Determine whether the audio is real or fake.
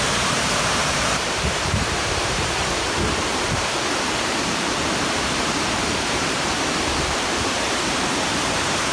fake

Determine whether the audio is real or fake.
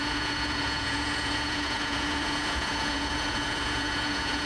fake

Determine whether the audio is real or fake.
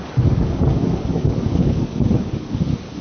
fake